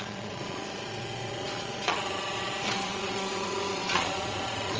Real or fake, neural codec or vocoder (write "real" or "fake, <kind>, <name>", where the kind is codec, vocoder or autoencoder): fake, vocoder, Vocos